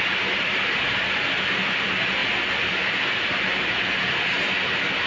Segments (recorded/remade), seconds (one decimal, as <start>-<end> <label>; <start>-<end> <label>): 0.0-5.1 recorded